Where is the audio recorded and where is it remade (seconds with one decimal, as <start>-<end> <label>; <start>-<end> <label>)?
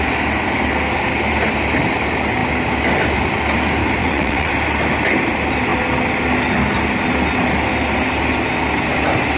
0.0-4.0 recorded; 4.0-4.5 remade; 4.5-9.4 recorded